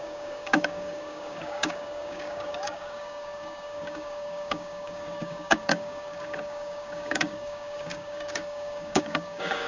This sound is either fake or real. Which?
fake